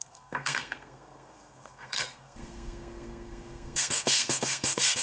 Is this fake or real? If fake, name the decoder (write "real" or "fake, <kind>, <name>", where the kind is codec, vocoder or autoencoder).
fake, codec, SNAC